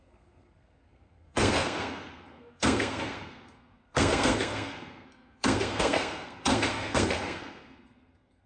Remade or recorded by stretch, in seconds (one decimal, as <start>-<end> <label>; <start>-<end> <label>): 0.0-8.5 remade